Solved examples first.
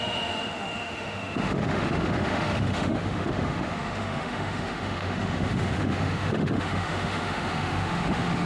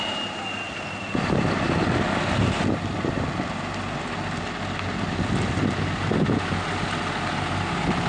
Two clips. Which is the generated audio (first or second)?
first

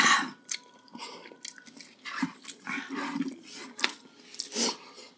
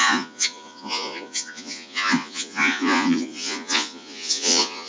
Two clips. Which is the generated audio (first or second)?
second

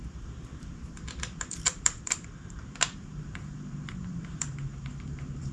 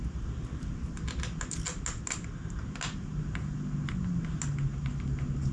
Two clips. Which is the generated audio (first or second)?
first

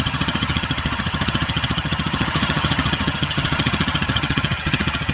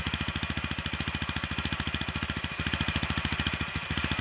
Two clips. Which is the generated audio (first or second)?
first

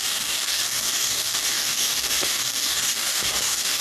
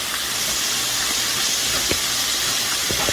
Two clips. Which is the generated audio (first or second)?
first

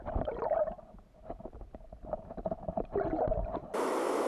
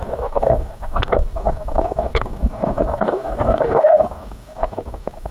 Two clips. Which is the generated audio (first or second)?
second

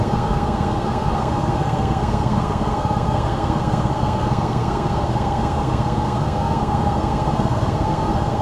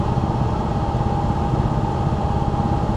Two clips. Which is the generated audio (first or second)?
first